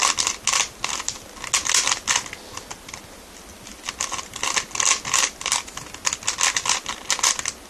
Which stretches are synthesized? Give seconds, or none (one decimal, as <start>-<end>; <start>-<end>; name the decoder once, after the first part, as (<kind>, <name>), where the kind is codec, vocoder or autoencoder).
none